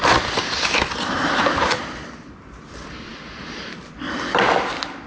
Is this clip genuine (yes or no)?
yes